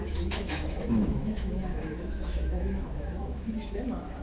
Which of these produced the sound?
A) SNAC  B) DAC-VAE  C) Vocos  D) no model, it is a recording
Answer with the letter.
B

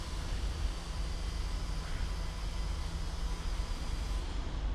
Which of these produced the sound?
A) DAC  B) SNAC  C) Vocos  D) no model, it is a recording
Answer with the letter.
D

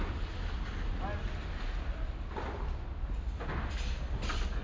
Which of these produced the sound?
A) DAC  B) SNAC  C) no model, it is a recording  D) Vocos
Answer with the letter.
C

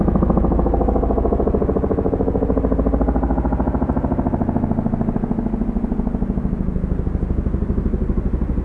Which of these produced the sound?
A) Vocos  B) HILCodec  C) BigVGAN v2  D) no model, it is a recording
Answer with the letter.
D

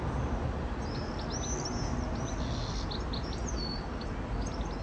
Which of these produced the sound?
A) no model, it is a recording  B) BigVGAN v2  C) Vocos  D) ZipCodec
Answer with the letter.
A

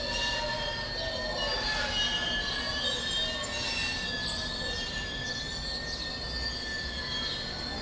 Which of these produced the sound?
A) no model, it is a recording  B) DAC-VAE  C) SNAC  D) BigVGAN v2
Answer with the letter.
A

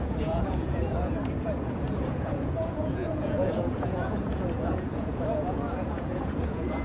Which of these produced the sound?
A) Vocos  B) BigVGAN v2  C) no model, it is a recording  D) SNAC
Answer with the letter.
A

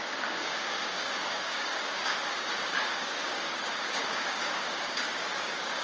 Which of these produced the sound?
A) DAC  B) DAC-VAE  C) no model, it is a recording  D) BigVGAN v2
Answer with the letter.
A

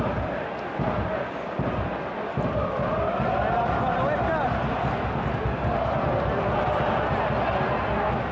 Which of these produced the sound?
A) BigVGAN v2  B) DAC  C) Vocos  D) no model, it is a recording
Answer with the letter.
D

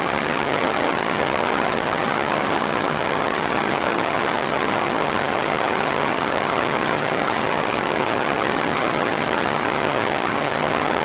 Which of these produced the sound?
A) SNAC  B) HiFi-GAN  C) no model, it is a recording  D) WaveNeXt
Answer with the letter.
B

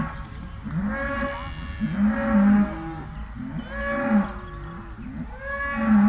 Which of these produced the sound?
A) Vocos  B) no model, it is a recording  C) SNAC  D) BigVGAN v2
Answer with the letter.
B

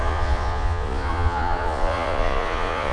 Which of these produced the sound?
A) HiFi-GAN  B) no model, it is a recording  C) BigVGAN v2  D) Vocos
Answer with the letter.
D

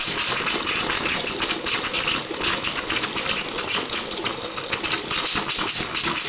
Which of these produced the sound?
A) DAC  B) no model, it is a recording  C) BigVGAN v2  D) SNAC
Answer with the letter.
B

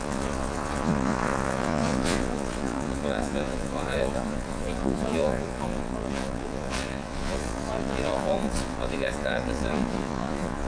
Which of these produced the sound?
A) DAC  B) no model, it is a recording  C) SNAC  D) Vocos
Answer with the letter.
D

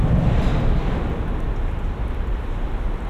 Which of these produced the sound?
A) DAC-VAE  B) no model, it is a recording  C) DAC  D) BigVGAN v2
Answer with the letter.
B